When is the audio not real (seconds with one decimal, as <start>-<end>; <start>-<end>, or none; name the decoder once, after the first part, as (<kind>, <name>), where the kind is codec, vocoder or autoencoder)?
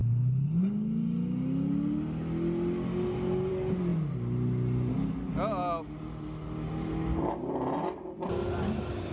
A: none